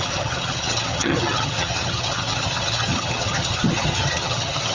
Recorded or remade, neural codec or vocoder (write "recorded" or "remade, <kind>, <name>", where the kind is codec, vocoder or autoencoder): remade, vocoder, HiFi-GAN